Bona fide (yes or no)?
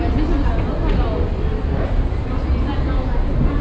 yes